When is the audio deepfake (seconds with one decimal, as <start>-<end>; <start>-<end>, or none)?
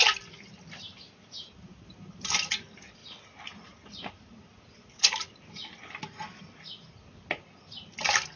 none